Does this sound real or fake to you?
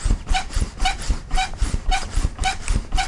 fake